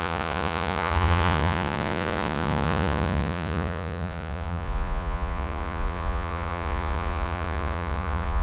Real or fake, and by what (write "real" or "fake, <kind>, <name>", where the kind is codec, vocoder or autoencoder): fake, vocoder, Vocos